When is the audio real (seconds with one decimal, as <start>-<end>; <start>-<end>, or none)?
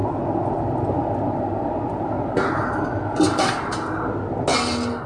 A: 0.0-5.1